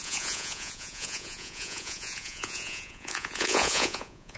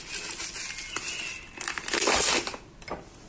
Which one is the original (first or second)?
second